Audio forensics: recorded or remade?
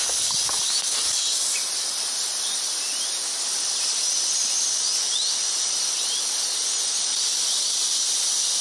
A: recorded